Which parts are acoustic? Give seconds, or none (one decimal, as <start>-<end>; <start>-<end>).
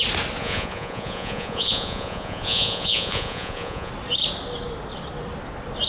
0.0-0.4; 3.9-5.9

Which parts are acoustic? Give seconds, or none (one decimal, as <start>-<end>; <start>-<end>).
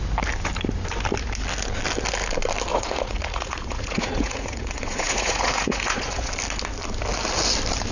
0.0-2.7; 6.3-7.9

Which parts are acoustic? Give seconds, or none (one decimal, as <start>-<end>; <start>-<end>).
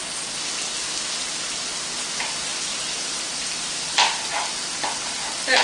0.0-5.6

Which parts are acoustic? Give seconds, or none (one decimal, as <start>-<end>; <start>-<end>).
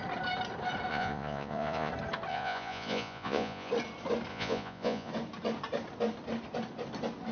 0.0-0.9; 1.9-2.3; 3.7-4.3; 5.1-7.3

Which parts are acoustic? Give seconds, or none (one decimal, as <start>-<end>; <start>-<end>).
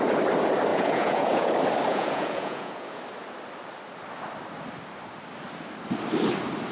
0.0-0.7; 1.5-1.9; 3.0-6.7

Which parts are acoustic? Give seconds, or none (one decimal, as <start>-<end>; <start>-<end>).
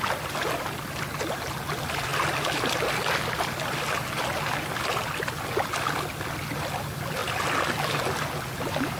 0.0-9.0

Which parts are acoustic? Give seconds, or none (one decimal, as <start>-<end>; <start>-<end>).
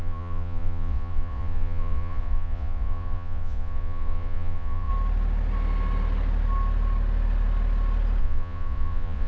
4.9-8.2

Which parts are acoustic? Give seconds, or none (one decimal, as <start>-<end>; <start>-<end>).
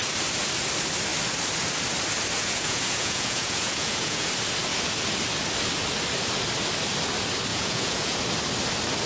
0.0-2.4; 4.3-7.5; 8.2-9.1